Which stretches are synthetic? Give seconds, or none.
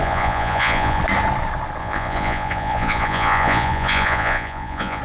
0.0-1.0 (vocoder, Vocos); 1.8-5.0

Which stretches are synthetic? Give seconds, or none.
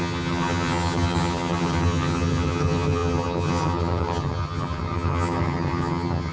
0.0-6.3 (vocoder, HiFi-GAN)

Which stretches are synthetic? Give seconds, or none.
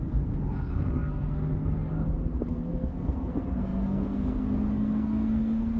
0.0-5.8 (codec, SNAC)